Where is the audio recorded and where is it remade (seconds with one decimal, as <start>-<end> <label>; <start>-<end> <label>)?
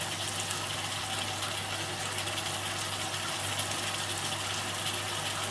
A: 0.0-5.5 recorded